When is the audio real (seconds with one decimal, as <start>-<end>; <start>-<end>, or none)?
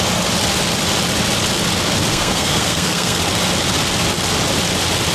0.0-2.1; 3.2-5.1